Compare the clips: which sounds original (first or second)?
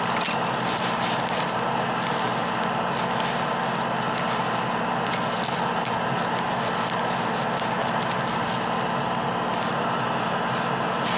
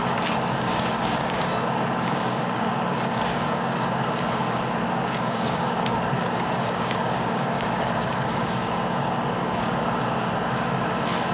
first